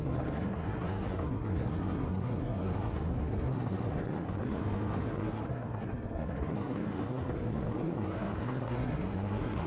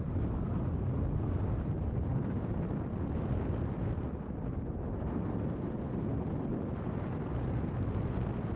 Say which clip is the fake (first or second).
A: first